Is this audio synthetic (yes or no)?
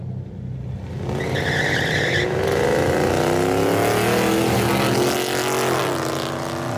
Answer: no